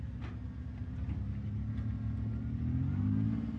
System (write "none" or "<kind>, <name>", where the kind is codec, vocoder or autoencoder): none